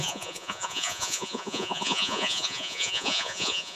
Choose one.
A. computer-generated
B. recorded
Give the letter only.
A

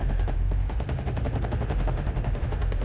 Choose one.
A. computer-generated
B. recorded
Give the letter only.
A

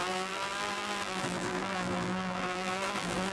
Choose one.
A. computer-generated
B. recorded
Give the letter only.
A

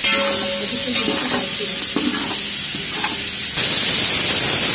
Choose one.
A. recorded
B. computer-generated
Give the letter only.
A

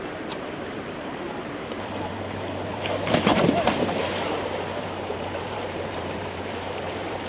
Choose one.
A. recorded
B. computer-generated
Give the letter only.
B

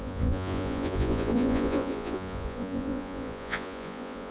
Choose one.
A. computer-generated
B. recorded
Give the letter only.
A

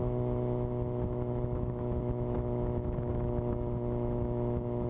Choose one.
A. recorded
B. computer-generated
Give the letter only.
B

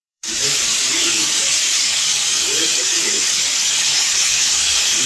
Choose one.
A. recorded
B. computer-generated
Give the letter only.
B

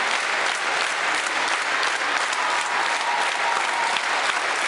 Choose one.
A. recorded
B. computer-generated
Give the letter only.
A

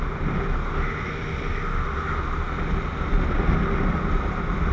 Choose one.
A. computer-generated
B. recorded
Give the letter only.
B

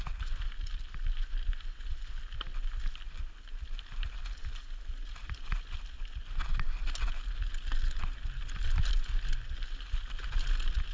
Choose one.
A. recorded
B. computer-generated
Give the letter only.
A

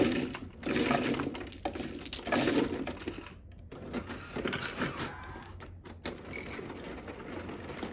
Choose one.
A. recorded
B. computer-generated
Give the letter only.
A